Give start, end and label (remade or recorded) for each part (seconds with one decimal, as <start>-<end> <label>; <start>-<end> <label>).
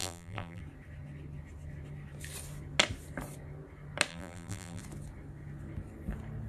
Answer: 0.0-0.6 remade; 0.6-4.1 recorded; 4.1-4.8 remade; 4.8-6.5 recorded